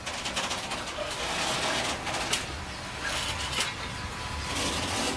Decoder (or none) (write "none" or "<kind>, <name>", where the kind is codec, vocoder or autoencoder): none